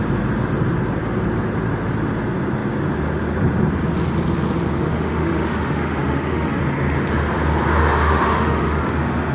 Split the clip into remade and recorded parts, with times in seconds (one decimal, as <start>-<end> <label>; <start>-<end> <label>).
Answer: 0.0-4.9 recorded; 4.9-6.6 remade; 6.6-7.8 recorded; 7.8-8.8 remade; 8.8-9.3 recorded

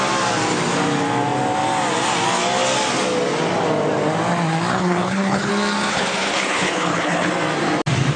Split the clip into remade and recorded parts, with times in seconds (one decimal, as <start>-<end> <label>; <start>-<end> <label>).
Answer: 0.0-4.7 recorded; 4.7-5.5 remade; 5.5-5.9 recorded; 5.9-7.3 remade; 7.3-8.2 recorded

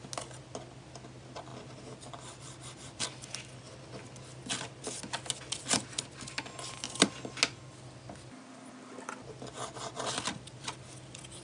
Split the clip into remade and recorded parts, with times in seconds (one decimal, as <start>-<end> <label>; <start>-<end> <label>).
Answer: 0.0-11.4 recorded

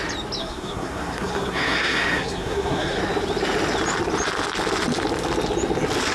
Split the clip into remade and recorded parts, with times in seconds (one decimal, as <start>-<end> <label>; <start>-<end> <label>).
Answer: 0.0-0.4 recorded; 0.4-3.0 remade; 3.0-6.1 recorded